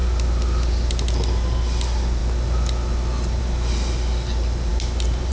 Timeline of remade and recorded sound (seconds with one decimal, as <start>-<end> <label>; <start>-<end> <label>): 0.0-5.3 recorded